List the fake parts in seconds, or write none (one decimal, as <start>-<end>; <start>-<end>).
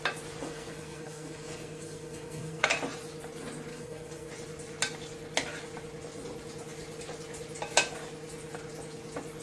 0.4-2.7; 3.7-4.3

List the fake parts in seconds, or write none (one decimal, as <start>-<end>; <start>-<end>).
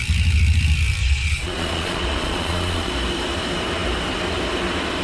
1.0-2.9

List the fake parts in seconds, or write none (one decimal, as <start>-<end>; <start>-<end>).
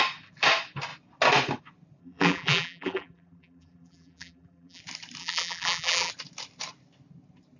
2.0-4.8; 5.2-6.1